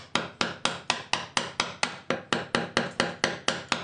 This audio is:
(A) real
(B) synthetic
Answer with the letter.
A